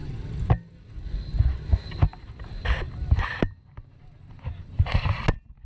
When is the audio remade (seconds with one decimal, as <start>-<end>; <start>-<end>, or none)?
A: none